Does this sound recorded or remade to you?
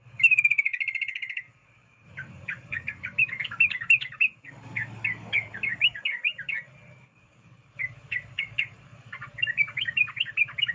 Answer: remade